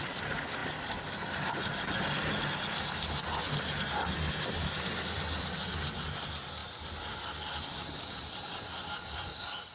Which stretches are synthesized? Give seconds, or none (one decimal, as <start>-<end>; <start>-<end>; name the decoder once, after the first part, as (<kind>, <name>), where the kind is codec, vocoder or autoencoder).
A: none